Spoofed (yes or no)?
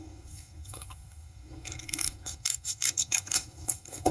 yes